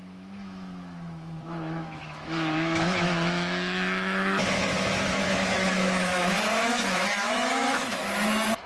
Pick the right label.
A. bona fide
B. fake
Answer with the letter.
B